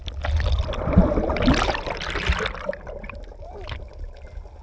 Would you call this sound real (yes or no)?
yes